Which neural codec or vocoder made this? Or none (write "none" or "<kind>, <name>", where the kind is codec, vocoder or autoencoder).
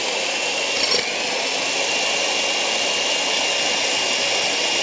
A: none